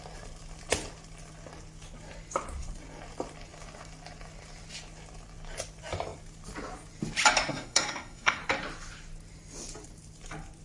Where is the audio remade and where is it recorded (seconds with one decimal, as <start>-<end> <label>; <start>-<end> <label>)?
0.0-7.5 recorded; 7.5-8.4 remade; 8.4-10.6 recorded